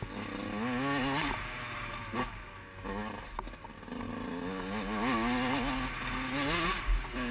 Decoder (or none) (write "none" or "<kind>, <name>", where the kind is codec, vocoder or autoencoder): none